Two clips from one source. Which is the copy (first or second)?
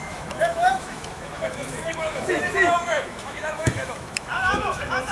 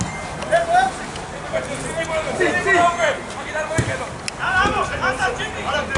first